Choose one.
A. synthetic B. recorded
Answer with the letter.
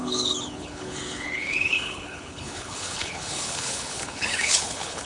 A